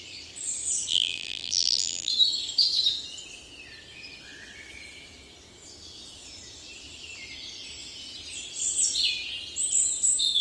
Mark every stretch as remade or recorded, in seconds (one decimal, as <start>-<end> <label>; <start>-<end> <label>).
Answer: 0.0-0.9 recorded; 0.9-2.1 remade; 2.1-10.4 recorded